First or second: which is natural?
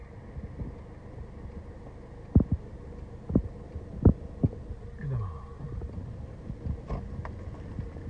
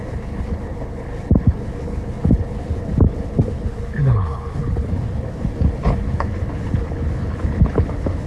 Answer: first